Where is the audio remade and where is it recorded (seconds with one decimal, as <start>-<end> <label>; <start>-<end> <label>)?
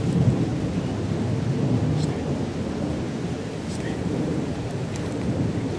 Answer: 0.0-0.5 remade; 0.5-3.6 recorded; 3.6-5.8 remade